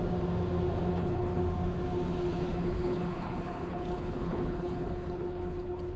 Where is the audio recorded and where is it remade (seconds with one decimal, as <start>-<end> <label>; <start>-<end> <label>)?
0.0-0.9 recorded; 0.9-1.4 remade; 1.4-2.3 recorded; 2.3-6.0 remade